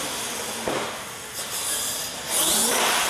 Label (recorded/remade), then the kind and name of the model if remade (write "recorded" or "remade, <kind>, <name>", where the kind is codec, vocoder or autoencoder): recorded